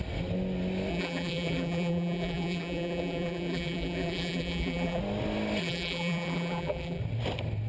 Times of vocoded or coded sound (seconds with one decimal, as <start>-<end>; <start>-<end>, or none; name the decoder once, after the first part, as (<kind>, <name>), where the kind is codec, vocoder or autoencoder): 0.9-5.0 (vocoder, BigVGAN v2); 5.6-7.0